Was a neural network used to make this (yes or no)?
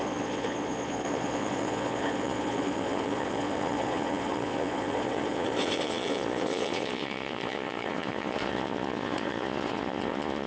yes